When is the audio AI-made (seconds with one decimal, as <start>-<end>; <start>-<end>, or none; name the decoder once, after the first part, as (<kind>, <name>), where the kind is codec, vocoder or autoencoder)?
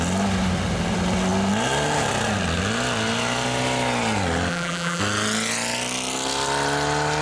4.5-5.0 (vocoder, BigVGAN v2)